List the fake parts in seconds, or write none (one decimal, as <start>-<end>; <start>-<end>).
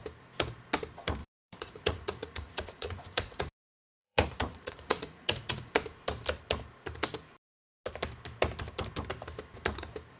1.2-5.7